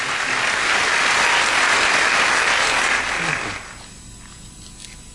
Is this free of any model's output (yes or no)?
yes